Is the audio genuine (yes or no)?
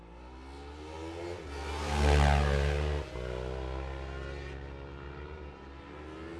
yes